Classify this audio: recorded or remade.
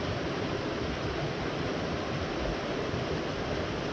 recorded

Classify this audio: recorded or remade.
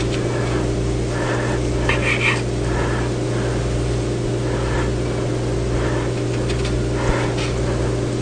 recorded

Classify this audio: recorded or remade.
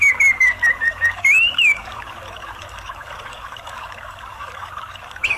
remade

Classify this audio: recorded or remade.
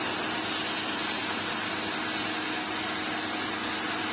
recorded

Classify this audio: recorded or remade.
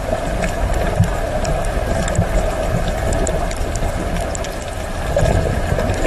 recorded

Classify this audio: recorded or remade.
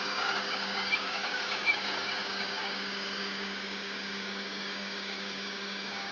remade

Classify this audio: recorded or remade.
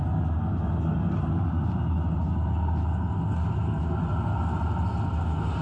recorded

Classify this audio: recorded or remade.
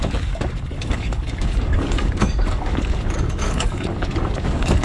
remade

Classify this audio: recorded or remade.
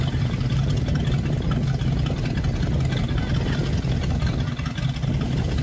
recorded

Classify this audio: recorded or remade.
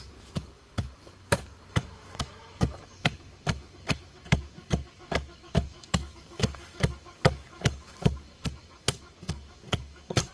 remade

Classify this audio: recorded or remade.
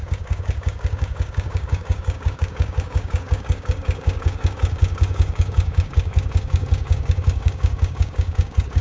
remade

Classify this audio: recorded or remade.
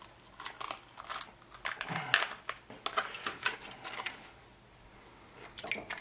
recorded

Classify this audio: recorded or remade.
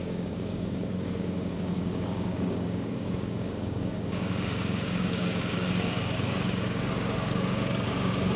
remade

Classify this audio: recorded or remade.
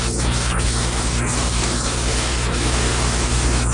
remade